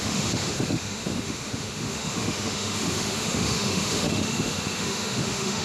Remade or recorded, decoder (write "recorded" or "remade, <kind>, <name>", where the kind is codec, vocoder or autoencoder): remade, autoencoder, DAC-VAE